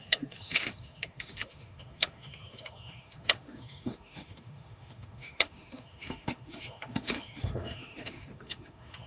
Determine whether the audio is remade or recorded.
remade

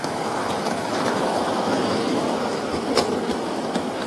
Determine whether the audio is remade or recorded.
remade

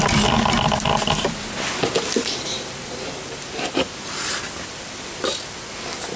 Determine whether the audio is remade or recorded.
recorded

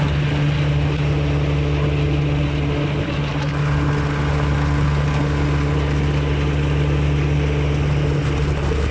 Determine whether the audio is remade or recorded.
recorded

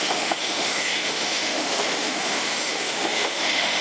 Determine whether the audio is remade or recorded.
remade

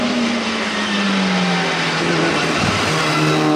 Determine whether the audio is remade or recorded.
recorded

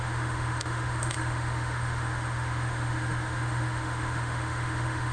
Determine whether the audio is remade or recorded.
remade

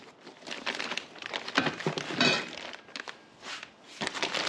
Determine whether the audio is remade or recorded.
recorded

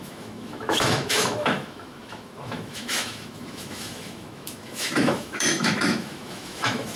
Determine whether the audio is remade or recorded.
remade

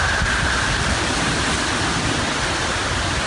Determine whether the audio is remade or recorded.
recorded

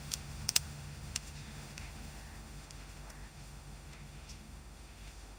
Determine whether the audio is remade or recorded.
remade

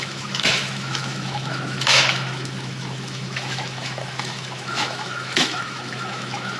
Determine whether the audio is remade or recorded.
remade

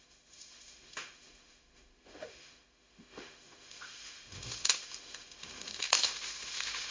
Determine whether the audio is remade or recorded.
remade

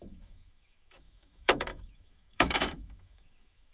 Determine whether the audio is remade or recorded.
remade